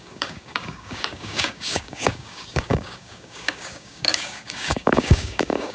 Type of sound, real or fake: fake